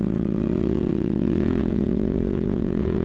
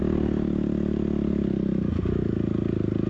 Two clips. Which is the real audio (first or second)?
second